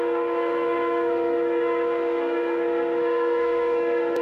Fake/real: fake